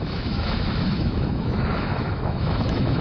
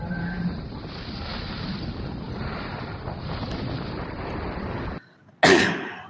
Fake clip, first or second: first